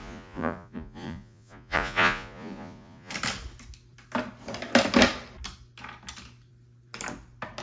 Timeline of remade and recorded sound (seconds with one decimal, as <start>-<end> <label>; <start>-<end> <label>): 0.0-3.1 remade; 3.1-7.6 recorded